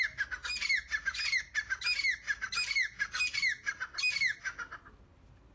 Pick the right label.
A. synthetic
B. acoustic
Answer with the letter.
B